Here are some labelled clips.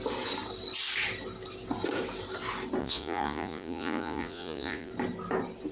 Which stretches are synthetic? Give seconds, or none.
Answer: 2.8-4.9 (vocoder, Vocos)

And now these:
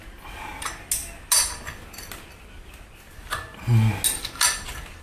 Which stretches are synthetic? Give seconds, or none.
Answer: none